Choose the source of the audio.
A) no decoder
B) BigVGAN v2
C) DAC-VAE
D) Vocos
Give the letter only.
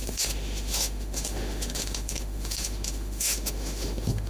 C